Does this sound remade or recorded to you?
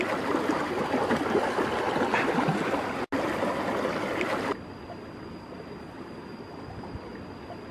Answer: recorded